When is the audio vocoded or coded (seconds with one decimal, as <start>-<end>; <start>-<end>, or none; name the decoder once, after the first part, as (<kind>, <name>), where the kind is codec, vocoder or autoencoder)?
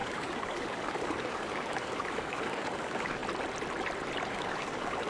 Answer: 0.0-3.2 (codec, DAC); 4.3-5.1